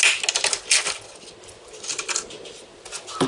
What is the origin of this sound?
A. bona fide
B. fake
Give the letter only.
A